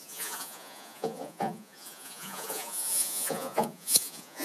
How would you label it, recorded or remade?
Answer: remade